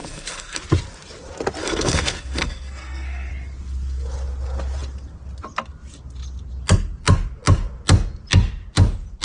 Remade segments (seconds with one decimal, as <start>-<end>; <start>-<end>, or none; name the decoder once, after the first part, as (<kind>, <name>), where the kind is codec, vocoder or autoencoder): 0.0-0.6 (codec, SNAC); 1.6-3.3